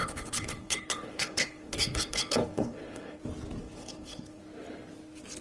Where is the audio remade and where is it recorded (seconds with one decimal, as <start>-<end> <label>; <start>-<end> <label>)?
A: 0.0-3.2 remade; 3.2-3.6 recorded; 3.6-4.4 remade; 4.4-5.4 recorded